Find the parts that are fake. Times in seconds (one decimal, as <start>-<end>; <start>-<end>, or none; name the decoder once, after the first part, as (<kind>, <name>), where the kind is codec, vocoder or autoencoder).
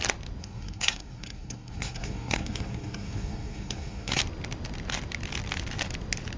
0.4-4.2 (codec, SNAC)